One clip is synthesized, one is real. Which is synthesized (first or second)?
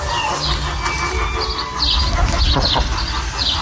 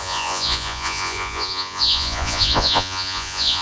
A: second